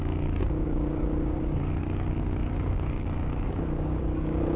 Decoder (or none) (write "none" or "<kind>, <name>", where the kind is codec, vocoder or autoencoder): codec, DAC